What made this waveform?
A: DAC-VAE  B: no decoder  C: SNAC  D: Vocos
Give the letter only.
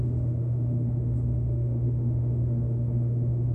A